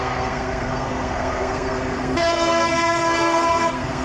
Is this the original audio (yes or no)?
no